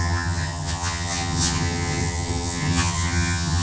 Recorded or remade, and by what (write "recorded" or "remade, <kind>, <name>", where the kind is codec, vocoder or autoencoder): remade, vocoder, HiFi-GAN